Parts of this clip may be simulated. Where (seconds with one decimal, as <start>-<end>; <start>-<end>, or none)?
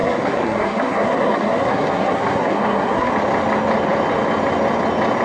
0.0-3.1